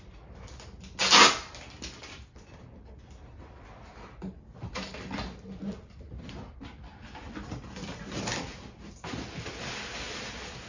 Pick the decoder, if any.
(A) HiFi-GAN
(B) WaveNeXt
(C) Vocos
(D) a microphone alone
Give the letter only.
D